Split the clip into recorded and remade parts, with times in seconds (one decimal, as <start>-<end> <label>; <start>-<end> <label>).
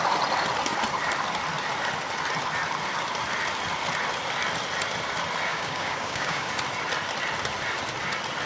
0.0-5.5 recorded; 5.5-6.5 remade; 6.5-8.5 recorded